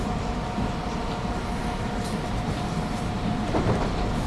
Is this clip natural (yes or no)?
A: no